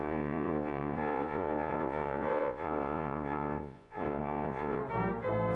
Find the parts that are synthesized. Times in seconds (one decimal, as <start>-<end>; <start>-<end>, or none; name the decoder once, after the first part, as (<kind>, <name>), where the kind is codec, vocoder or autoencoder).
0.0-4.8 (vocoder, Vocos)